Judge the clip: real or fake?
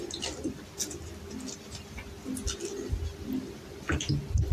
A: real